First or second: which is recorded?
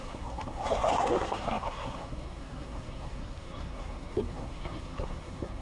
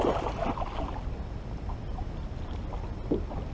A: second